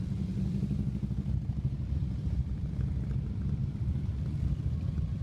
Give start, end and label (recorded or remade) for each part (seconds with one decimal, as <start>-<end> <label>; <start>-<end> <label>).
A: 0.0-3.6 recorded; 3.6-4.1 remade; 4.1-5.2 recorded